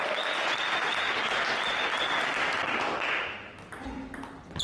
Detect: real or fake real